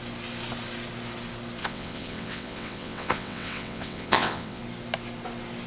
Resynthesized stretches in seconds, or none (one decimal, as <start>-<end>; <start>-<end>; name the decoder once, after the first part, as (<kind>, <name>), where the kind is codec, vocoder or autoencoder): 1.6-4.6 (vocoder, WaveNeXt)

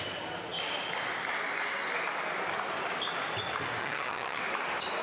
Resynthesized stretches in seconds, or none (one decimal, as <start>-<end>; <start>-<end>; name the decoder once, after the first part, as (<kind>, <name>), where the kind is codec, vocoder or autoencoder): 3.8-4.4 (vocoder, HiFi-GAN)

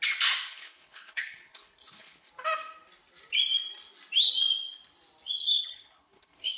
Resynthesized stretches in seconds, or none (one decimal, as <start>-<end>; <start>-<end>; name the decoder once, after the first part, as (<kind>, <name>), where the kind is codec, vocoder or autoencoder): 0.4-2.3 (codec, HILCodec); 5.4-6.6

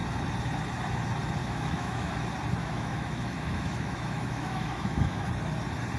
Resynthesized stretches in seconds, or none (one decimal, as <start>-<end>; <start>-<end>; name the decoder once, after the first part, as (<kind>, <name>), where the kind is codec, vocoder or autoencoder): 1.4-2.1 (autoencoder, DAC-VAE); 2.6-5.3